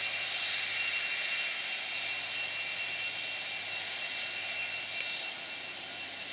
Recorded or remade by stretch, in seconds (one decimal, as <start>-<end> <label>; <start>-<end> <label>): 0.0-6.3 recorded